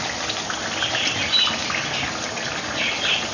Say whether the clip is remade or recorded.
recorded